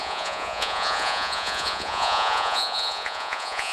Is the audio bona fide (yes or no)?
no